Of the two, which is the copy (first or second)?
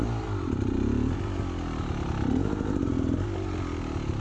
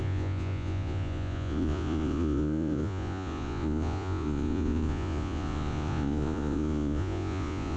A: second